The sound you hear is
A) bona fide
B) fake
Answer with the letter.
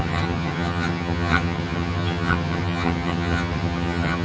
B